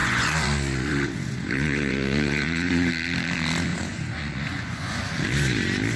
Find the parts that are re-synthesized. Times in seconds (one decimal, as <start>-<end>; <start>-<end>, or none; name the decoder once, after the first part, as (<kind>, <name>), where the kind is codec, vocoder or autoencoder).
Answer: 0.0-2.9 (vocoder, Vocos); 3.7-5.0

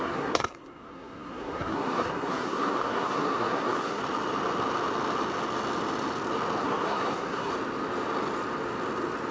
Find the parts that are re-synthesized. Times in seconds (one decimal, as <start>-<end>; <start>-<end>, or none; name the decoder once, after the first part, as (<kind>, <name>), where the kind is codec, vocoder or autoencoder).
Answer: 0.0-4.0 (codec, SNAC); 6.6-7.5

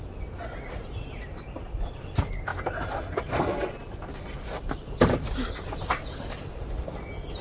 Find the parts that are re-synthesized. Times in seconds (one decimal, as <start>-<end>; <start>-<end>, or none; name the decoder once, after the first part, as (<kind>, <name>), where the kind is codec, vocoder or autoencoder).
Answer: none

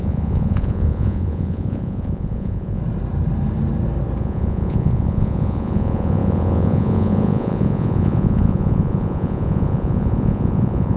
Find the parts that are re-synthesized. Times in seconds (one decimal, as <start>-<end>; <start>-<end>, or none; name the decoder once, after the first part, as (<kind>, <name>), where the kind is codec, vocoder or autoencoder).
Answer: 0.0-2.8 (vocoder, Vocos); 4.2-11.0

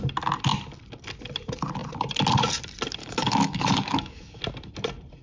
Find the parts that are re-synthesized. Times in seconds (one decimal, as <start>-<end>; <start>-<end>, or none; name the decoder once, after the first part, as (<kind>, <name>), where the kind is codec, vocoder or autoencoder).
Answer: 3.0-4.4 (codec, DAC)